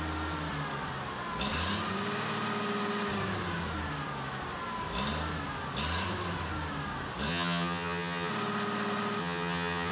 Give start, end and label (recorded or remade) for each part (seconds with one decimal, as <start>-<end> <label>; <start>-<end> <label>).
0.0-7.3 recorded; 7.3-8.3 remade; 8.3-9.2 recorded; 9.2-9.9 remade